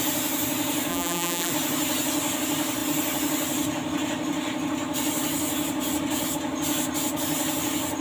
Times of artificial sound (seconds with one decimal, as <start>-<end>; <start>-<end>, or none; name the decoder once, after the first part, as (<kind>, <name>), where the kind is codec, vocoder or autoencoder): 0.9-1.5 (vocoder, BigVGAN v2)